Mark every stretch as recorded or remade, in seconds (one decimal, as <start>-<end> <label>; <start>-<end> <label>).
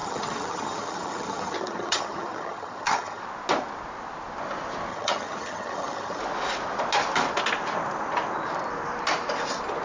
0.0-3.2 remade; 3.2-4.9 recorded; 4.9-6.2 remade; 6.2-9.8 recorded